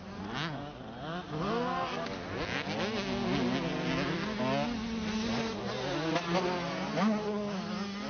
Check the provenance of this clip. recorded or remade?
recorded